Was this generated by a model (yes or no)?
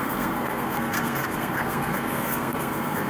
yes